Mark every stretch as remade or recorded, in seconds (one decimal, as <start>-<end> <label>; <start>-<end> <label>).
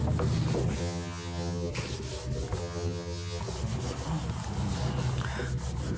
0.0-0.8 recorded; 0.8-1.7 remade; 1.7-2.6 recorded; 2.6-3.4 remade; 3.4-6.0 recorded